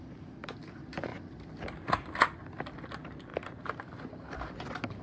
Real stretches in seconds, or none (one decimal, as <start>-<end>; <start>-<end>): 0.0-5.0